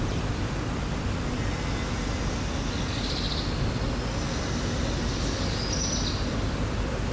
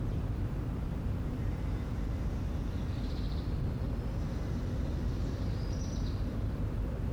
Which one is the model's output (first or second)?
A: second